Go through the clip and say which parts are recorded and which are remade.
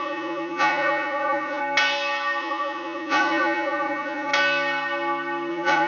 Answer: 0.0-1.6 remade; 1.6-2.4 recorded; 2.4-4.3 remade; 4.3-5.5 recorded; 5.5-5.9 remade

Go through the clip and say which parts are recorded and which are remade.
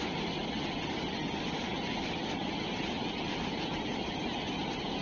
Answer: 0.0-5.0 recorded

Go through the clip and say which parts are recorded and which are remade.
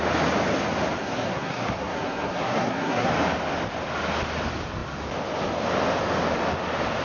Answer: 0.0-1.0 recorded; 1.0-3.1 remade; 3.1-7.0 recorded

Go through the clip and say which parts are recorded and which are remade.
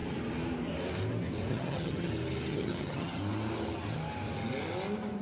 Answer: 0.0-1.5 recorded; 1.5-2.1 remade; 2.1-2.5 recorded; 2.5-3.2 remade; 3.2-5.2 recorded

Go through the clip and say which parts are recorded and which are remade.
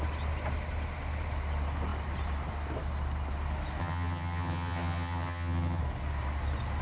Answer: 0.0-3.8 recorded; 3.8-5.8 remade; 5.8-6.8 recorded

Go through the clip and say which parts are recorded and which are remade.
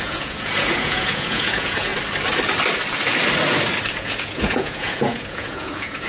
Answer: 0.0-1.9 remade; 1.9-3.9 recorded; 3.9-6.1 remade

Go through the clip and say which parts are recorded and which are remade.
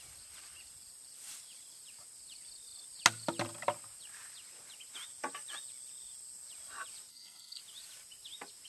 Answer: 0.0-7.1 recorded; 7.1-7.6 remade; 7.6-8.7 recorded